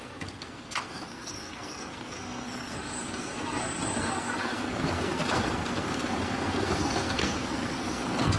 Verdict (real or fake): fake